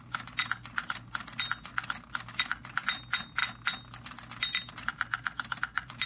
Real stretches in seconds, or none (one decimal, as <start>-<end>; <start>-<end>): 0.4-2.6; 3.4-4.7